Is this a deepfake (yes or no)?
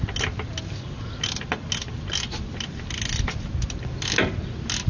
no